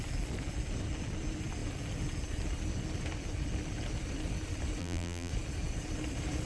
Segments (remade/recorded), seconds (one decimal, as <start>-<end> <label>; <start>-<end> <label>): 0.0-4.8 recorded; 4.8-5.3 remade; 5.3-6.5 recorded